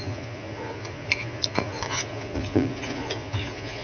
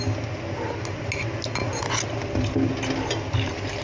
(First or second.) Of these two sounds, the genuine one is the second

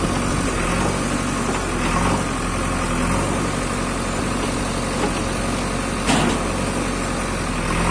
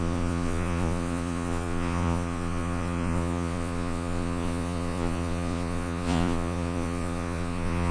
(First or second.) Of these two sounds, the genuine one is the first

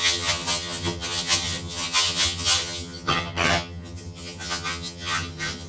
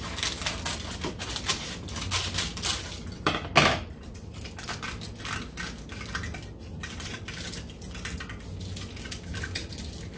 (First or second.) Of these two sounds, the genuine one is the second